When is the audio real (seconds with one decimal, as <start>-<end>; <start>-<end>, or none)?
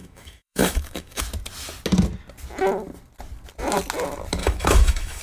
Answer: 1.2-4.4